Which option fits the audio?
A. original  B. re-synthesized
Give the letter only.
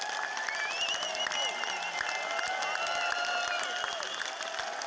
A